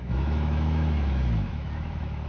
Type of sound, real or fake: fake